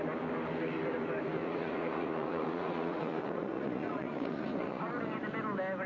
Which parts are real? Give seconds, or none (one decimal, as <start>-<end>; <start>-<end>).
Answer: 0.0-1.4; 4.9-5.9